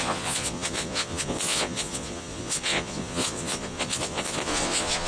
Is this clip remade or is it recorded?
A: remade